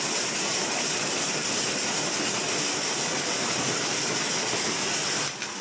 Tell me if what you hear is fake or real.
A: real